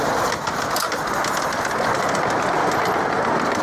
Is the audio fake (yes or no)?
no